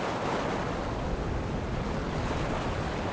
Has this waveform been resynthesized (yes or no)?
no